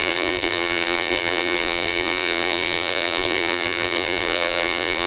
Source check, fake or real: fake